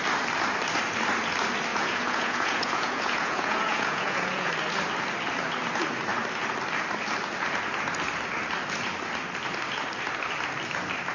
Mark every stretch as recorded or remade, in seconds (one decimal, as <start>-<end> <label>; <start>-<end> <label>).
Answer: 0.0-1.7 recorded; 1.7-4.5 remade; 4.5-11.1 recorded